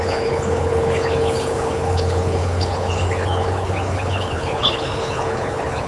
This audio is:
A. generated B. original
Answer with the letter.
A